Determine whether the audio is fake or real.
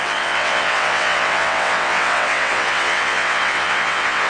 fake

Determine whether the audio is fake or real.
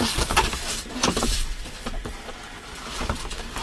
real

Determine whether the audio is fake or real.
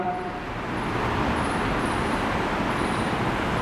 fake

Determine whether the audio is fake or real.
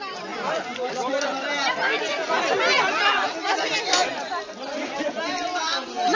real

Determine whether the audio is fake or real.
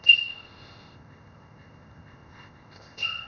fake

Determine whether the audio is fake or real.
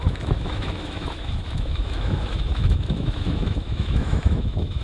fake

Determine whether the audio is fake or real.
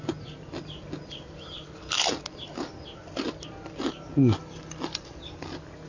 real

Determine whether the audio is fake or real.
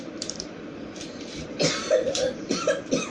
fake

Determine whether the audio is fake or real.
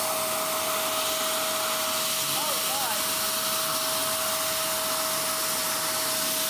real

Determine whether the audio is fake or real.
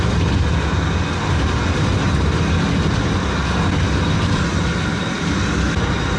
real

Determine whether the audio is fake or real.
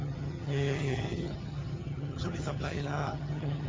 fake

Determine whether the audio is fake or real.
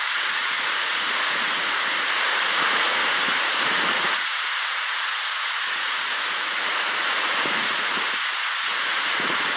fake